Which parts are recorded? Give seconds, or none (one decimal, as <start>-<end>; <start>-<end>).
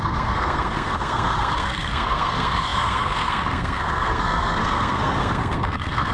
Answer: none